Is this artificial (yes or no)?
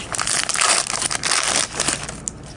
no